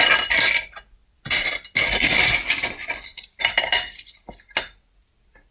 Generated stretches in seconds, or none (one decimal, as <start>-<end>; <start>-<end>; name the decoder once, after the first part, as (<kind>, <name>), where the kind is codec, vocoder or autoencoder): 1.0-1.5 (vocoder, BigVGAN v2); 3.1-3.7